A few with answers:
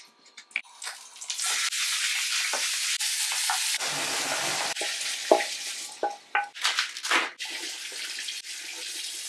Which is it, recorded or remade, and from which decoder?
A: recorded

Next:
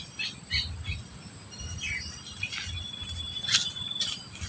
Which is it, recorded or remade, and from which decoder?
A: recorded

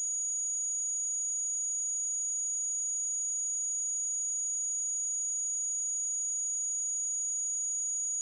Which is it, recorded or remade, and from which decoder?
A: recorded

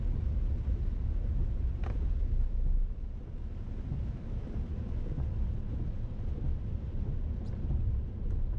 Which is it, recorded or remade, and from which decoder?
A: recorded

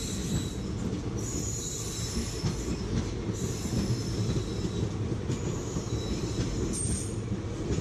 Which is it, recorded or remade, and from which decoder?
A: recorded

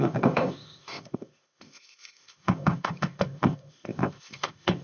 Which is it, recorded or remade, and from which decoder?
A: remade, codec, ZipCodec